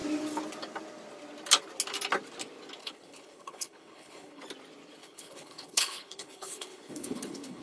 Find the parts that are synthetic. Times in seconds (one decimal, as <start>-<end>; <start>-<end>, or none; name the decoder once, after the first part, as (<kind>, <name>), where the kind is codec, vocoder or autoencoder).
2.8-4.4 (codec, HILCodec); 5.0-7.6